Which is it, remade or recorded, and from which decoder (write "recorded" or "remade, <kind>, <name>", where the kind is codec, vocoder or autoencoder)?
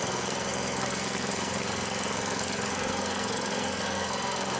remade, codec, SNAC